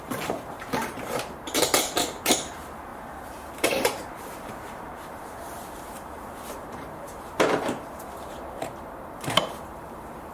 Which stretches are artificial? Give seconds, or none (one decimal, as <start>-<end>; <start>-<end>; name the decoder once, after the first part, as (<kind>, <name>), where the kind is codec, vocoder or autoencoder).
0.0-10.3 (vocoder, BigVGAN v2)